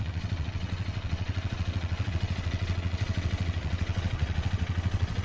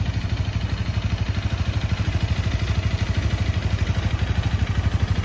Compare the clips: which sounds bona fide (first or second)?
second